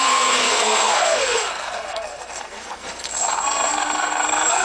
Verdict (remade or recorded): remade